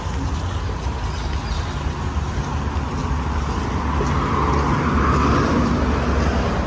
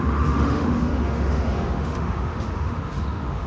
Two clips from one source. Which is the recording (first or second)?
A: first